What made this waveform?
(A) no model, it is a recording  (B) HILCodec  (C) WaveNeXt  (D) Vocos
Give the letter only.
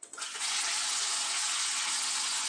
D